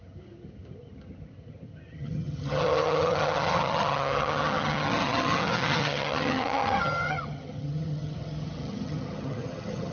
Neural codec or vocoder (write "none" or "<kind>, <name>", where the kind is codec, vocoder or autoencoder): vocoder, HiFi-GAN